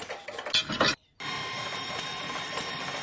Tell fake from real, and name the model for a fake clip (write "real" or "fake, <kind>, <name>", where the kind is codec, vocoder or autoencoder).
real